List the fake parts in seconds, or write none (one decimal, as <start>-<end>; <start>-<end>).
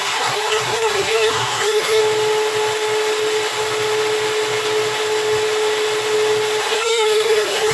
0.0-2.0; 6.6-7.7